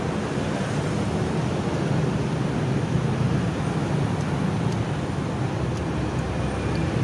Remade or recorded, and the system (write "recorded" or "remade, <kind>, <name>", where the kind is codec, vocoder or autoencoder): recorded